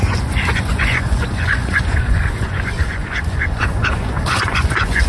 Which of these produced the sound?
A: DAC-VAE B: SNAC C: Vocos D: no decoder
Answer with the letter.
C